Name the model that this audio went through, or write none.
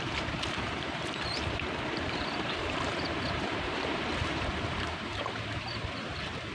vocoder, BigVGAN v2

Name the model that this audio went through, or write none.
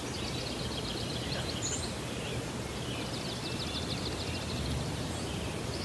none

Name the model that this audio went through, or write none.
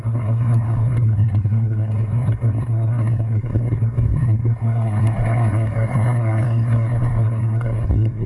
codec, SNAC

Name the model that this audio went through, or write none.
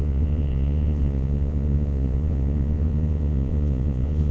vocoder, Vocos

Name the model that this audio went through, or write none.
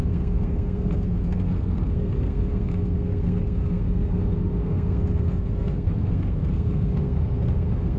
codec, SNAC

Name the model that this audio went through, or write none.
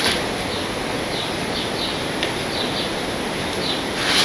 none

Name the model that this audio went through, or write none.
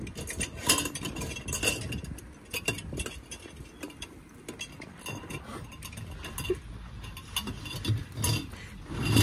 none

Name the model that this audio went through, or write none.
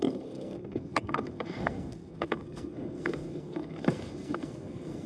codec, SNAC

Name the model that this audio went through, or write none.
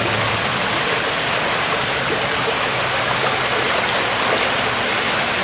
none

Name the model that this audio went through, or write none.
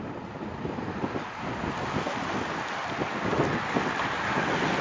none